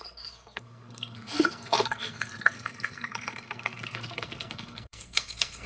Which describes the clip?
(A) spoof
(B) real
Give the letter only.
A